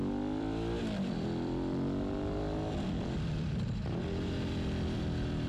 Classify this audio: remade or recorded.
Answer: remade